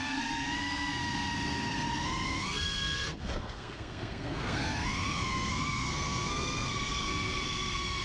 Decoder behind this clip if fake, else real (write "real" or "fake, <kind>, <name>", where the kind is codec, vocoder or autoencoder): fake, codec, SNAC